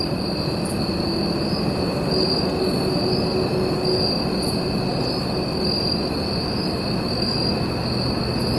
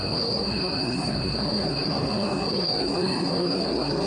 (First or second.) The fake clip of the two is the second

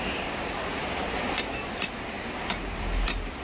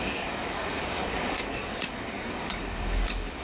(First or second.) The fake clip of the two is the second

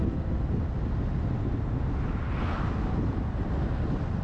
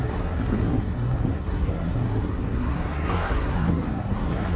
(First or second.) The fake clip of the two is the second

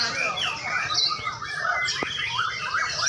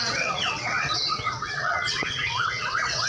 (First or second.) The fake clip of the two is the second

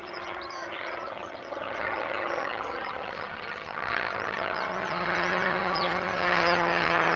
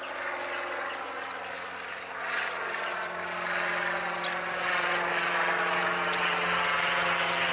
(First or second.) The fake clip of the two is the first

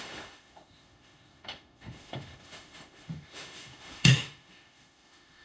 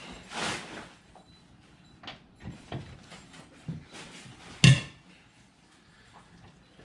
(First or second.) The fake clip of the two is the first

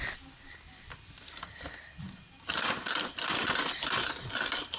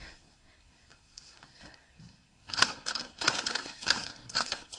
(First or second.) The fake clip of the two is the second